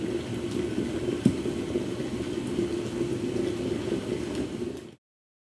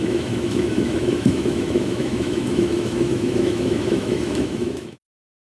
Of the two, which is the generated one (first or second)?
second